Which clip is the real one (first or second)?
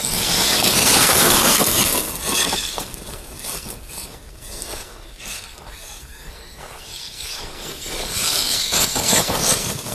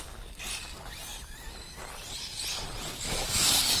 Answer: second